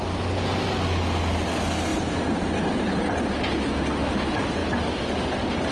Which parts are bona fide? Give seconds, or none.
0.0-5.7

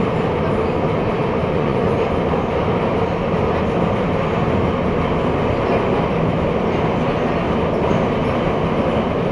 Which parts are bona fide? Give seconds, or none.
0.0-1.4; 2.1-9.3

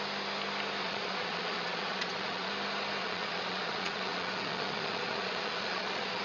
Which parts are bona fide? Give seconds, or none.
0.0-0.8; 2.5-3.0

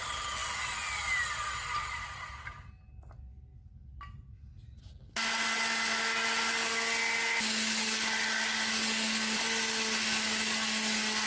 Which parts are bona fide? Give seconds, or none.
0.0-11.3

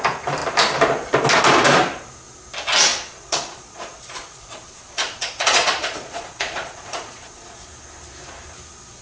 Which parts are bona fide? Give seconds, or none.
0.0-2.9; 7.7-9.0

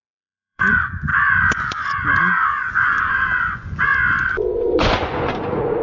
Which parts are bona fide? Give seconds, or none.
3.9-4.6